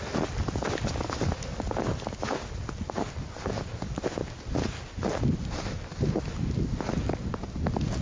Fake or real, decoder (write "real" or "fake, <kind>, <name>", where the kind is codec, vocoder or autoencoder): real